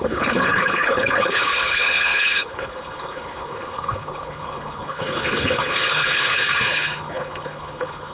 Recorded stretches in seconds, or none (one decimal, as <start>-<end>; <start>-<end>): none